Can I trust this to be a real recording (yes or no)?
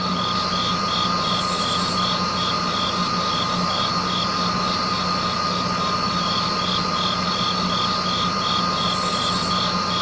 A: yes